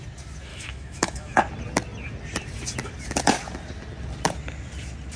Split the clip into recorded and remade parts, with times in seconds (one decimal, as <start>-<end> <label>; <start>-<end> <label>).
0.0-0.5 recorded; 0.5-1.4 remade; 1.4-5.2 recorded